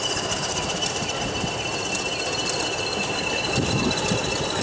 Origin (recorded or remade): remade